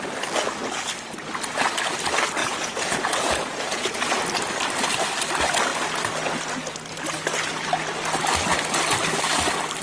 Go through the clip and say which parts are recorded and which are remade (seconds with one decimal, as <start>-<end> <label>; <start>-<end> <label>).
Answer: 0.0-2.4 recorded; 2.4-4.2 remade; 4.2-9.8 recorded